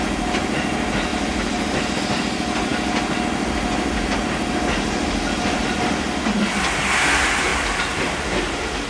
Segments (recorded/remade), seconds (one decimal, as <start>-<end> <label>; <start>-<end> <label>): 0.0-8.9 recorded